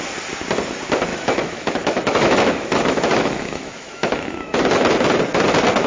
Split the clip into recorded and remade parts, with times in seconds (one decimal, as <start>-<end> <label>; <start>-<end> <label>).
0.0-1.1 recorded; 1.1-4.6 remade; 4.6-5.9 recorded